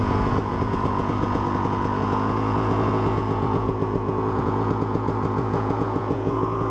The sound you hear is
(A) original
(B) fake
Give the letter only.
B